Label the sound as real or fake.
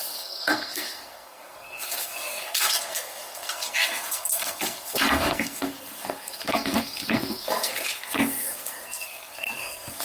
fake